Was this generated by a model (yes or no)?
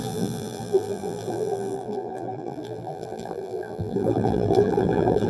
yes